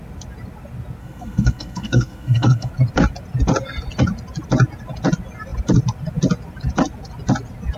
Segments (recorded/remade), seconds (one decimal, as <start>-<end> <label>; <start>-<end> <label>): 0.0-1.0 recorded; 1.0-2.7 remade; 2.7-7.8 recorded